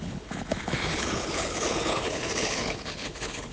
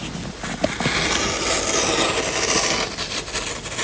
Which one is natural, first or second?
second